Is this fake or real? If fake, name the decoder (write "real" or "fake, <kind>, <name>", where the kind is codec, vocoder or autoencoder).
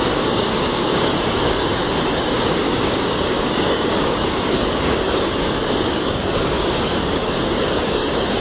fake, codec, DAC